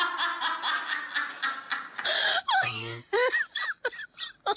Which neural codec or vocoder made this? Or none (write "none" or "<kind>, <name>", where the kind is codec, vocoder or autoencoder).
none